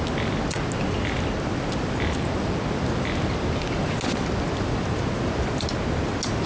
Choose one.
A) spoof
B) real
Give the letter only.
B